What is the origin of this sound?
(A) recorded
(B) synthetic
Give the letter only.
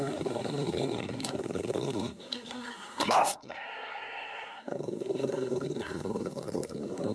B